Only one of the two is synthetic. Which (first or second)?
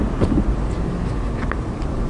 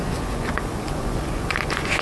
second